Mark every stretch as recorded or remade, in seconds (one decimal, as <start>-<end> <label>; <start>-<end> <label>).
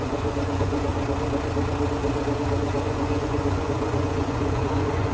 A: 0.0-0.9 remade; 0.9-2.6 recorded; 2.6-5.1 remade